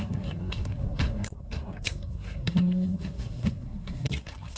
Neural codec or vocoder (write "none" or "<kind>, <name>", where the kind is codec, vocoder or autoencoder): codec, SNAC